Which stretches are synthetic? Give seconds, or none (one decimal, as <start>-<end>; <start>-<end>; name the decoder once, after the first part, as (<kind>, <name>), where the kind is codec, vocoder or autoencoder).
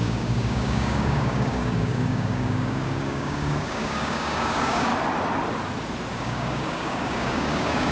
0.0-4.9 (codec, DAC); 6.1-7.9